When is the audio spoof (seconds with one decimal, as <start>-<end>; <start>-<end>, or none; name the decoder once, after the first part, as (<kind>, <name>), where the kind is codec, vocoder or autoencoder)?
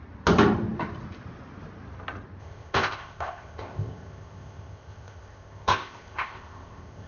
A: 2.4-7.1 (codec, ZipCodec)